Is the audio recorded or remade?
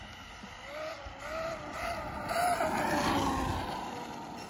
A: recorded